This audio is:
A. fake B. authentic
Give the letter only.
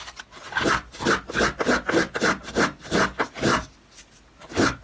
B